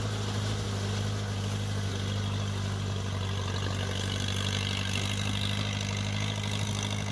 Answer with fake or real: real